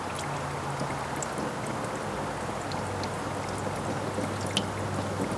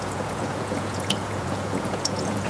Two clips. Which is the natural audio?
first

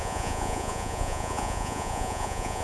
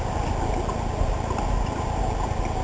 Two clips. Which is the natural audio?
second